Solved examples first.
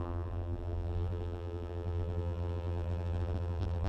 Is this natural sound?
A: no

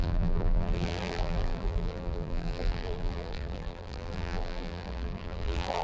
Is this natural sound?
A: no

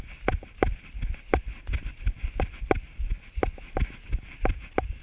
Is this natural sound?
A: yes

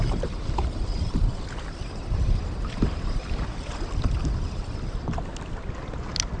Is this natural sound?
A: yes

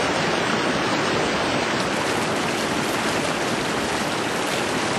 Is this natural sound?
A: yes